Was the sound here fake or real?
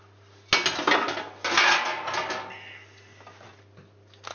real